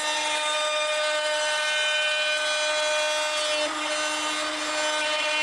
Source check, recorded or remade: recorded